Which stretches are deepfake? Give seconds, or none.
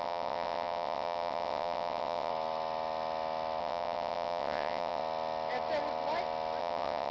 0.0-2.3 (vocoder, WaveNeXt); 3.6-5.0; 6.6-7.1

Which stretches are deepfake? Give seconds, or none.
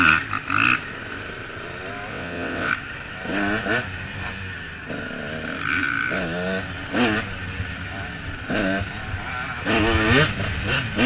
2.1-2.7 (vocoder, WaveNeXt)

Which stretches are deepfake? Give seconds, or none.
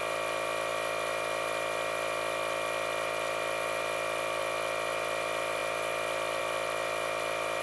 none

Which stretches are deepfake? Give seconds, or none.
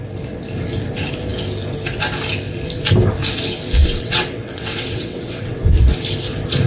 3.8-5.6 (vocoder, WaveNeXt)